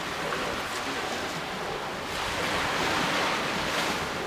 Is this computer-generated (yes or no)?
no